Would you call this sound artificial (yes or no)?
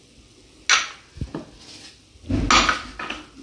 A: no